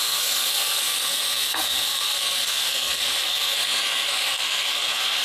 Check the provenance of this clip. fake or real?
fake